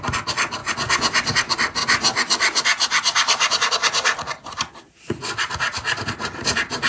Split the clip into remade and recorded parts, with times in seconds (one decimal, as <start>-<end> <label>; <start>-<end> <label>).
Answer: 0.0-0.6 recorded; 0.6-1.1 remade; 1.1-6.9 recorded